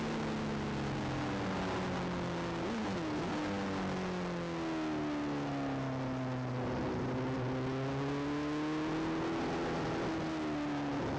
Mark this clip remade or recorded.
recorded